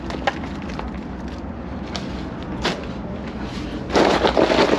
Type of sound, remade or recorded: recorded